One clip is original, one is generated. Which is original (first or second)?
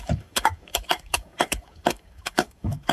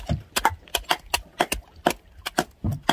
second